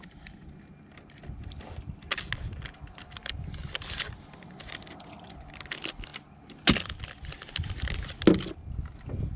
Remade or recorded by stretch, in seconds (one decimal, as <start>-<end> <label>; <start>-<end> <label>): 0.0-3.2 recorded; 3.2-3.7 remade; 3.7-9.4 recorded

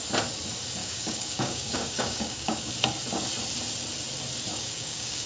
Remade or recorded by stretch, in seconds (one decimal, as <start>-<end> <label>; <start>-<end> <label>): 0.0-0.8 recorded; 0.8-2.7 remade; 2.7-4.5 recorded; 4.5-5.3 remade

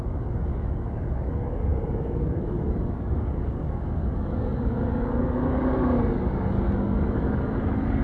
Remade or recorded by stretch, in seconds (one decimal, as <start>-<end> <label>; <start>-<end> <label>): 0.0-8.0 remade

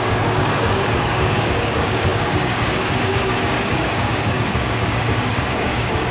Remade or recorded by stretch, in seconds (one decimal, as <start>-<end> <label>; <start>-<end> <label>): 0.0-6.1 remade

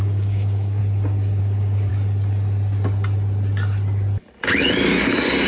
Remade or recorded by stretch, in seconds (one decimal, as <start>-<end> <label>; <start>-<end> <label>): 0.0-0.8 remade; 0.8-1.4 recorded; 1.4-1.9 remade; 1.9-5.5 recorded